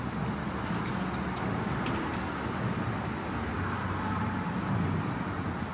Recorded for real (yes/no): yes